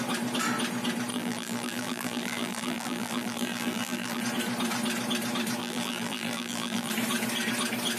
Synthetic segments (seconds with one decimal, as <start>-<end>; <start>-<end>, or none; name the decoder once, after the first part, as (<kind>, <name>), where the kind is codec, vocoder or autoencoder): 1.1-4.2 (vocoder, BigVGAN v2); 5.6-6.9